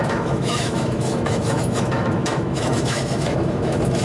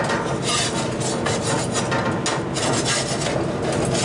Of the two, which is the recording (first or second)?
second